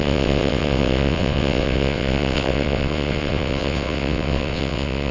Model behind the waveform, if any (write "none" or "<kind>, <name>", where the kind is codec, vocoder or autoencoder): vocoder, WaveNeXt